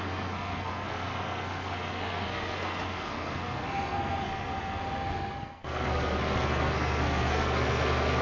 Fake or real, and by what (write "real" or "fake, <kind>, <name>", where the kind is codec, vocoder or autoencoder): fake, codec, SNAC